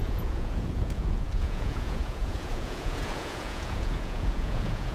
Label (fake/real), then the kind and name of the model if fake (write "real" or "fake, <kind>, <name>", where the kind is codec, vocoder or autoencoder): fake, vocoder, Vocos